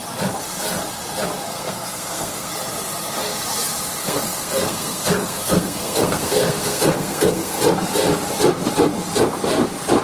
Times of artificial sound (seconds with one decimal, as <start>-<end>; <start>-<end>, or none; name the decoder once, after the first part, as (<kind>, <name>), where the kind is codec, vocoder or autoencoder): 1.5-2.5 (codec, SNAC); 4.0-7.6